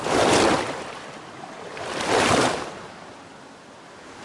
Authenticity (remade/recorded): recorded